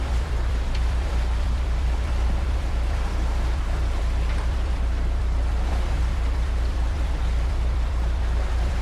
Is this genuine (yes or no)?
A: no